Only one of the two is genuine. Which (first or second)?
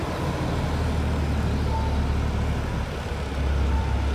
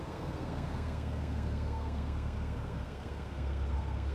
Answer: first